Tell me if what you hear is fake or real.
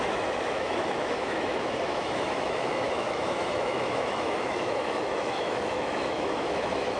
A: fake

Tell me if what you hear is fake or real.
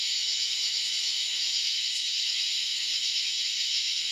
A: fake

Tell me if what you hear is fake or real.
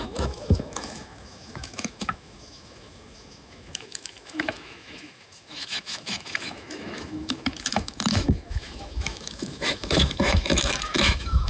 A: fake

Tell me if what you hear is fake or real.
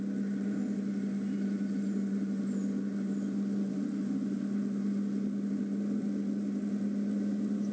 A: real